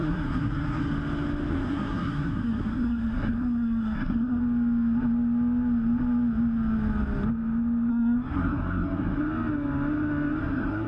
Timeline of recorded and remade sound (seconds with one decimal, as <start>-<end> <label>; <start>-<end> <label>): 0.0-0.9 remade; 0.9-1.5 recorded; 1.5-4.4 remade; 4.4-7.9 recorded; 7.9-9.2 remade; 9.2-10.4 recorded; 10.4-10.9 remade